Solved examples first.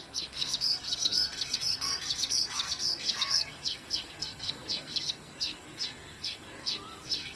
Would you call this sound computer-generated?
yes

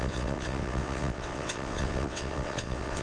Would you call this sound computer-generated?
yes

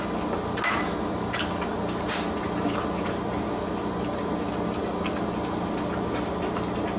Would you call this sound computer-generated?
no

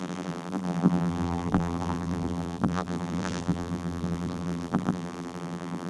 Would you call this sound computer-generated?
yes